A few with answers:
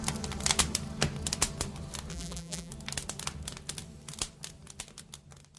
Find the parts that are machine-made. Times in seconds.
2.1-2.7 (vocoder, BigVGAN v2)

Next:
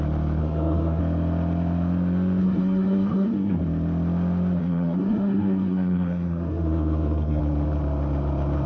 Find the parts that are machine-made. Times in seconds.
0.4-1.0 (codec, SNAC); 2.4-3.6; 4.6-7.4

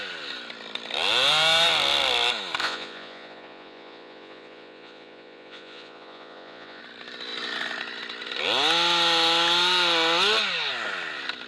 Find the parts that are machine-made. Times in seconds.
2.6-6.8 (vocoder, Vocos)

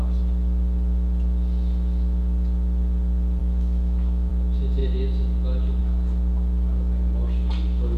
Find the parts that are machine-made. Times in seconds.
3.4-4.3 (autoencoder, DAC-VAE)

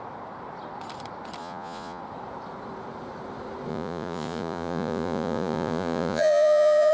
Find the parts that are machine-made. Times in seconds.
1.4-2.0 (vocoder, Vocos); 3.7-6.9

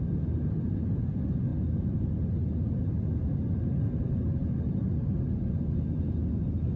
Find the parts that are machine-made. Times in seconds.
none

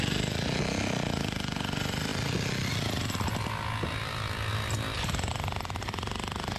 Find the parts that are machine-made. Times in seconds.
none